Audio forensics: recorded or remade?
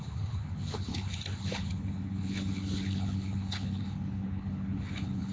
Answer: remade